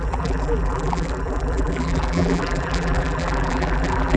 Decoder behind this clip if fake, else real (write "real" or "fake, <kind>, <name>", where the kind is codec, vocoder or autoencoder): fake, vocoder, BigVGAN v2